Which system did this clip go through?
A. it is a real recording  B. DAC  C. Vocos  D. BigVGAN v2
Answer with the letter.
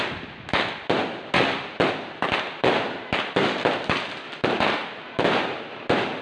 A